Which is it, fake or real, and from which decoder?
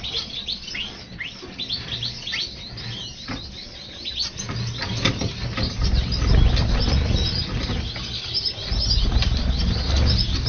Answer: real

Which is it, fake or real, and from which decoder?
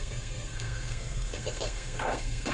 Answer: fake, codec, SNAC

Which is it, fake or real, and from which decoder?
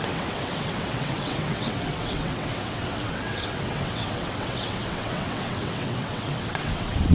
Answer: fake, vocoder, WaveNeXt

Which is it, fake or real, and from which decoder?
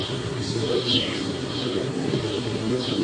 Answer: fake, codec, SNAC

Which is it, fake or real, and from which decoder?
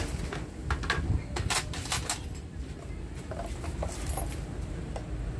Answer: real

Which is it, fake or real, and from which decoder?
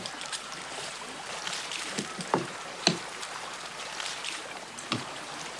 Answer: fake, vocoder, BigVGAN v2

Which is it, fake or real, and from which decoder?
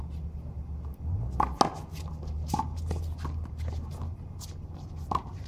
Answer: real